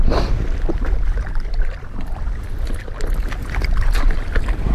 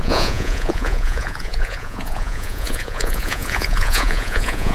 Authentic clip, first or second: first